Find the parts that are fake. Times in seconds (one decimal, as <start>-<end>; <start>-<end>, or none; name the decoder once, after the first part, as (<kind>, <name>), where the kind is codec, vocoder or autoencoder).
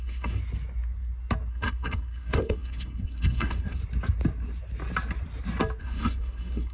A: 0.0-0.4 (codec, SNAC); 1.5-3.8; 5.8-6.7